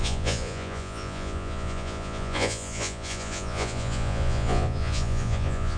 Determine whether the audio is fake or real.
fake